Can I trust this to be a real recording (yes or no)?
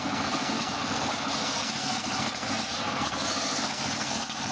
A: no